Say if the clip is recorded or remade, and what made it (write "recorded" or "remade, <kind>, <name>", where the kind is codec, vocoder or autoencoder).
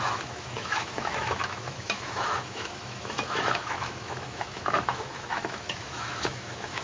remade, autoencoder, DAC-VAE